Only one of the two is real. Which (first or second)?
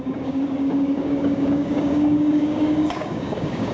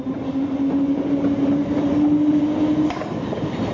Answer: second